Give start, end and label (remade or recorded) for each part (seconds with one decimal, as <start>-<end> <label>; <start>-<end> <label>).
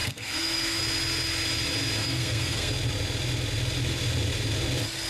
0.0-0.8 remade; 0.8-2.0 recorded; 2.0-2.7 remade; 2.7-5.1 recorded